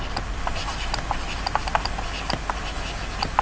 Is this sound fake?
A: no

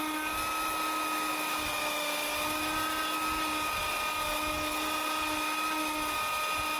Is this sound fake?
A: no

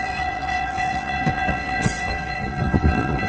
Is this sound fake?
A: yes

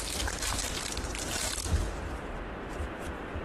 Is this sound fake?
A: yes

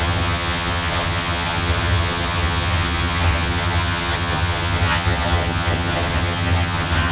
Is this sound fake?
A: yes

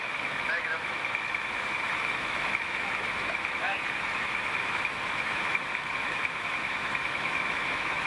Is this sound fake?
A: yes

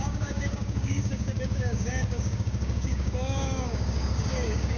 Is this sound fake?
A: yes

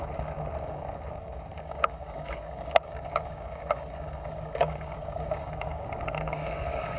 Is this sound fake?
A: yes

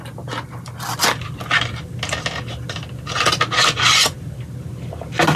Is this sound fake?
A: no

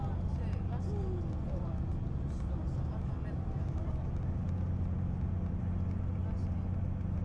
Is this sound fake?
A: no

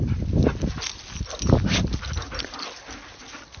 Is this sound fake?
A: no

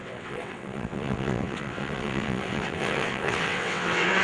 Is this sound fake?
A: yes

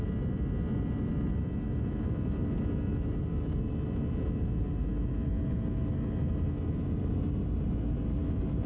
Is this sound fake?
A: no